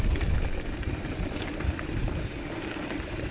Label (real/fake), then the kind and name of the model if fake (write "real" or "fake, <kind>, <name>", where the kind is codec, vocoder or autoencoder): fake, vocoder, BigVGAN v2